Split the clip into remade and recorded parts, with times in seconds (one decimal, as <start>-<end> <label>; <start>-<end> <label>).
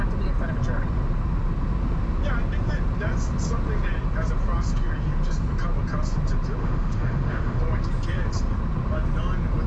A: 0.0-6.6 recorded; 6.6-7.6 remade; 7.6-9.7 recorded